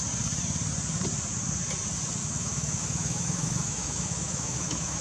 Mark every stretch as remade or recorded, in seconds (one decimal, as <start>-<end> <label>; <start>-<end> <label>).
0.0-2.2 recorded; 2.2-5.0 remade